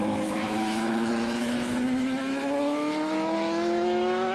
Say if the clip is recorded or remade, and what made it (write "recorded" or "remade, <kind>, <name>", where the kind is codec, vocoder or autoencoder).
remade, autoencoder, DAC-VAE